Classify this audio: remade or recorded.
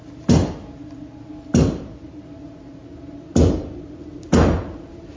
recorded